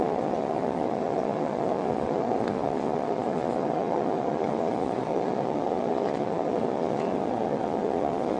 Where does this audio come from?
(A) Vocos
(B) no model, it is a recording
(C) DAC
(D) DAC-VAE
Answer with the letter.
A